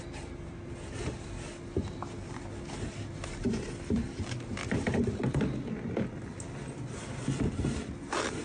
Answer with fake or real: fake